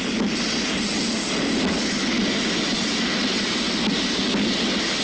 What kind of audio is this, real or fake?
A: real